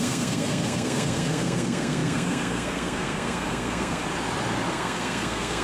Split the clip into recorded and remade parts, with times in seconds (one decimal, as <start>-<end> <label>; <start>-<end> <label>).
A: 0.0-4.0 remade; 4.0-4.7 recorded; 4.7-5.6 remade

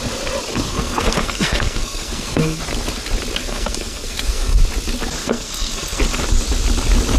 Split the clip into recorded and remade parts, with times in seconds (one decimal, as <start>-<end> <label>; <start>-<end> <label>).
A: 0.0-0.5 recorded; 0.5-2.6 remade; 2.6-3.4 recorded; 3.4-4.6 remade; 4.6-5.2 recorded; 5.2-6.0 remade; 6.0-7.2 recorded

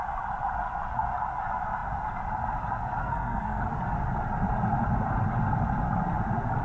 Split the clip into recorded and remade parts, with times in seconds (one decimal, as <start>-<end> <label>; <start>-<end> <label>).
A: 0.0-3.0 recorded; 3.0-3.8 remade; 3.8-6.6 recorded

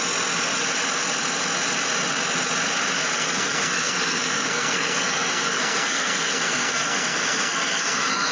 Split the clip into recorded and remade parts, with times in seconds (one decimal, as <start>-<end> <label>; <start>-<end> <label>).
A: 0.0-3.0 recorded; 3.0-8.3 remade

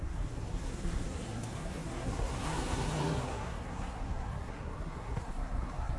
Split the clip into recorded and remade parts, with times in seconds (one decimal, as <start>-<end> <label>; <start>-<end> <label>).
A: 0.0-6.0 remade

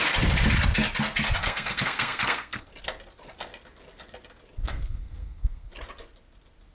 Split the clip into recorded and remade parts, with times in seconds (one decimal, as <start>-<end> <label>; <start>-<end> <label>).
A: 0.0-1.4 recorded; 1.4-2.7 remade; 2.7-4.6 recorded; 4.6-5.7 remade; 5.7-6.7 recorded

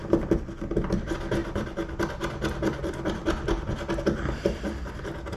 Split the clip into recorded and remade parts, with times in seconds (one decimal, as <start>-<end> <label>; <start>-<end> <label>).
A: 0.0-5.4 recorded